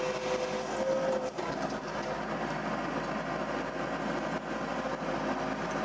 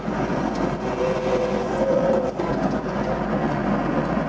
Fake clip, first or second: second